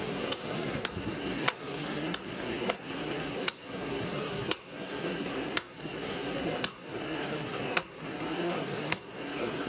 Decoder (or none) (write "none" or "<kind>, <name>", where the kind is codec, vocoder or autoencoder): codec, SNAC